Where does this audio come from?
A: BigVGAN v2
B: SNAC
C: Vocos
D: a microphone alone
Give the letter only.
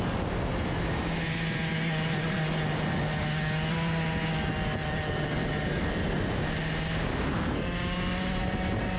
D